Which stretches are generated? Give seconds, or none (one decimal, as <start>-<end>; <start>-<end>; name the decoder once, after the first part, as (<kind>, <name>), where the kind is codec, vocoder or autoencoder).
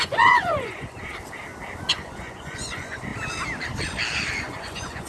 0.0-1.1 (vocoder, Vocos); 1.9-3.1; 4.4-5.1